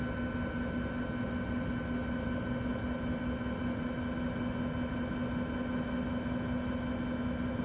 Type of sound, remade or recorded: recorded